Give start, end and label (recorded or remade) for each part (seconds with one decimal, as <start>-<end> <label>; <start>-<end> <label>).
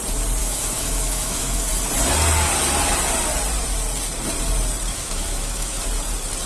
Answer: 0.0-0.4 recorded; 0.4-1.7 remade; 1.7-4.9 recorded; 4.9-5.8 remade; 5.8-6.5 recorded